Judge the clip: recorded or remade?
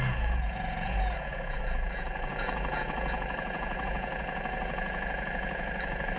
remade